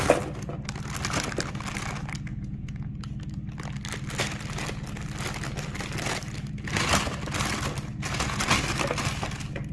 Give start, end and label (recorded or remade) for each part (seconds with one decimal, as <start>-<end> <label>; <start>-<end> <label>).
0.0-2.3 recorded; 2.3-2.9 remade; 2.9-7.9 recorded; 7.9-8.4 remade; 8.4-9.7 recorded